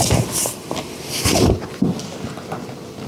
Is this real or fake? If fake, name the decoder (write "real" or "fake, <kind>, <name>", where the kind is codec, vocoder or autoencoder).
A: real